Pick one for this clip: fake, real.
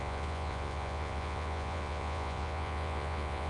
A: fake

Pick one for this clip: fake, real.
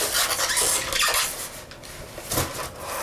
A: real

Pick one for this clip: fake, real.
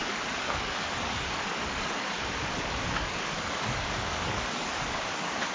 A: fake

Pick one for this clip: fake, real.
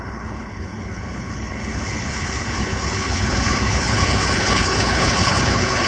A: fake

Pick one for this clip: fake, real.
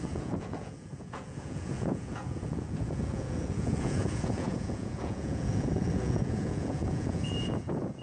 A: fake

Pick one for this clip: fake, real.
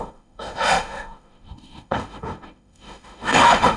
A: fake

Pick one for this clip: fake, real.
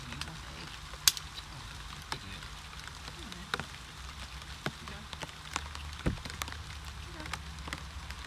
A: real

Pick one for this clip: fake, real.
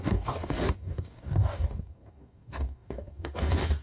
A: fake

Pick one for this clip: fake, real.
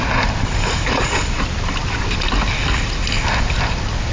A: real